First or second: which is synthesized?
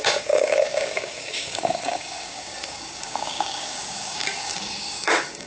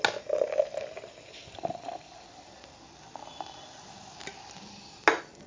first